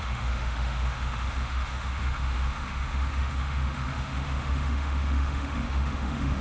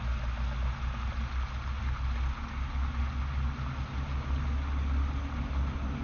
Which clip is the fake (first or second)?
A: first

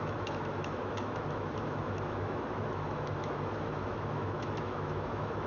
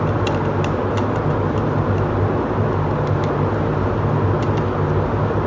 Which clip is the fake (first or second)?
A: first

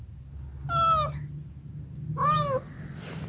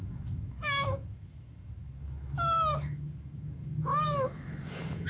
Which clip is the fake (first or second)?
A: second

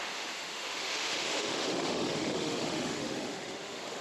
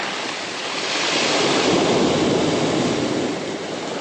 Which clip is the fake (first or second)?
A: first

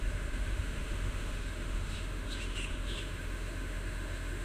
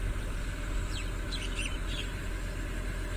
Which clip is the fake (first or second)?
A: first